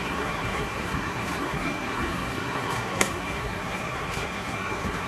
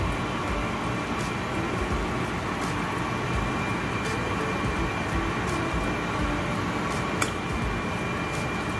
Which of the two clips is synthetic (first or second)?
first